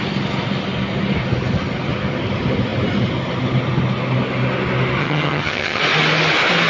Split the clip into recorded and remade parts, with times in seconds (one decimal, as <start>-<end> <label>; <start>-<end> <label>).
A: 0.0-5.0 recorded; 5.0-5.8 remade; 5.8-6.7 recorded